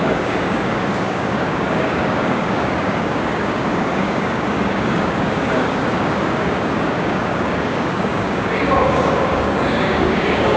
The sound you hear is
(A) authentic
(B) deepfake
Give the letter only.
B